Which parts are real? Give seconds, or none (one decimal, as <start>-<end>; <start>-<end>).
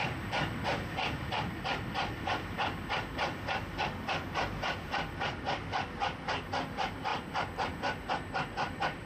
0.0-9.1